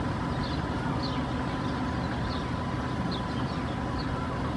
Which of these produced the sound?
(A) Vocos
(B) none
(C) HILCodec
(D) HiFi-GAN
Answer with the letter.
B